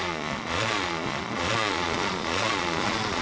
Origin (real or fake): fake